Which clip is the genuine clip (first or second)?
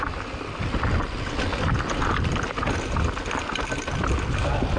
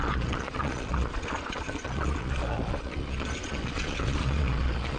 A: first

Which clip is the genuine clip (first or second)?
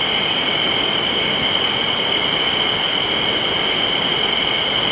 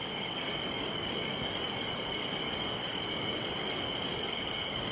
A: first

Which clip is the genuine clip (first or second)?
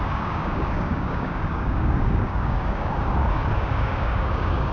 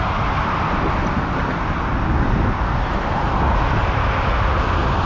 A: second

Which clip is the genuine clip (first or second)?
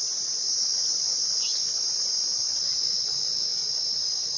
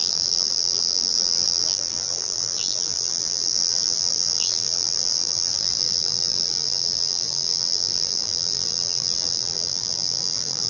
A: first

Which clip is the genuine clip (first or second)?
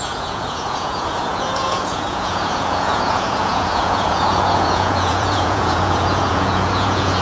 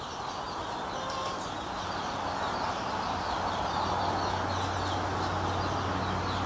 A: second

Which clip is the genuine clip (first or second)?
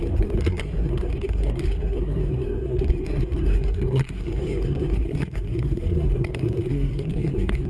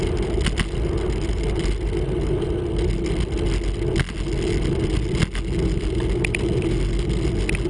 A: second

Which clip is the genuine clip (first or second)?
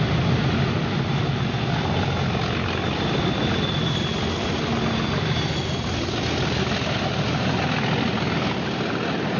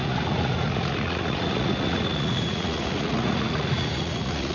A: first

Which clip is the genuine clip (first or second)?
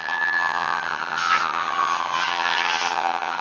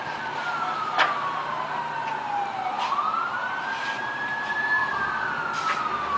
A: second